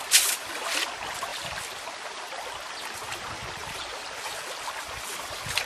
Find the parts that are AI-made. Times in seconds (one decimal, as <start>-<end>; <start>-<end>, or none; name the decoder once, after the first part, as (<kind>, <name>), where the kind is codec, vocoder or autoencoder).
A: 1.3-1.8 (vocoder, BigVGAN v2); 3.6-4.1